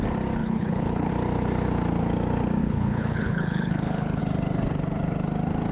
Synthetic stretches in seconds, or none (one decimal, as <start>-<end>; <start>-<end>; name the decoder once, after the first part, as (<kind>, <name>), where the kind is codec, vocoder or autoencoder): 0.4-1.1 (codec, HILCodec); 2.6-4.2